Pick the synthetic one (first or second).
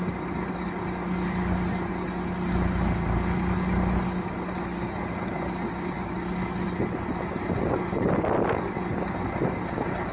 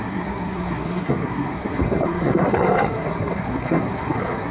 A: second